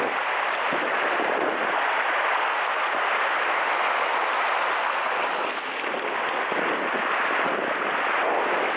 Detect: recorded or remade recorded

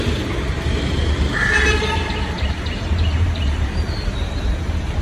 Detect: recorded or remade remade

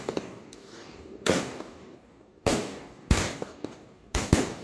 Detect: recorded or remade remade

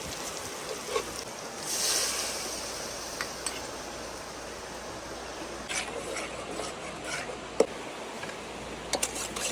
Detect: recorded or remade recorded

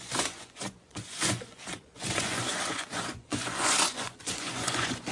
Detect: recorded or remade remade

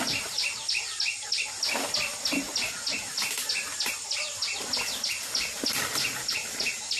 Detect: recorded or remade recorded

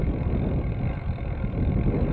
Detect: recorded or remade recorded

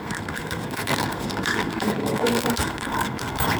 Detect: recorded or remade remade